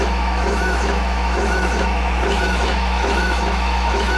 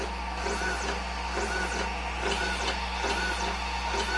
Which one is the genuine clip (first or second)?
second